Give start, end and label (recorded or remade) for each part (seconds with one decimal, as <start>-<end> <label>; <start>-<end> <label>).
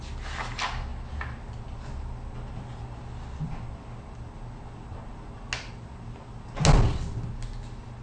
0.0-8.0 recorded